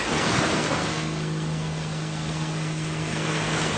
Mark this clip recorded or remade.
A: remade